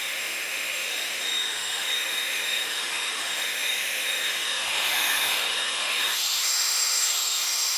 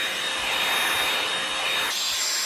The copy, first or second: first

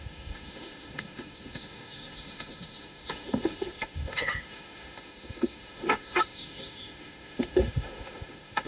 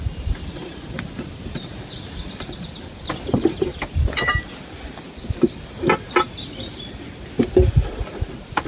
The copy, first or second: first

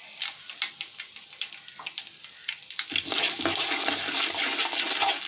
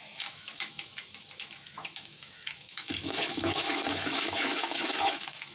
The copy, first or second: second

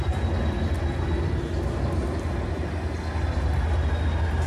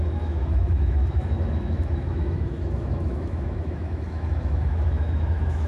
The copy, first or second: second